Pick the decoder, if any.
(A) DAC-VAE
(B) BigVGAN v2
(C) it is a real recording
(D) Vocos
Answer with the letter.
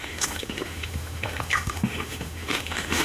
A